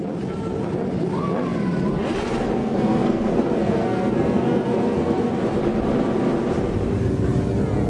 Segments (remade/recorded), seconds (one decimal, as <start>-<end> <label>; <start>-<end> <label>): 0.0-2.6 recorded; 2.6-5.3 remade; 5.3-7.9 recorded